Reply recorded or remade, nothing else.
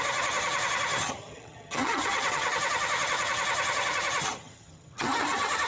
remade